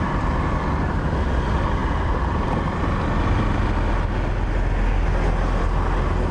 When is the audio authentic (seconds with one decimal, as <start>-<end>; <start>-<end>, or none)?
0.0-6.3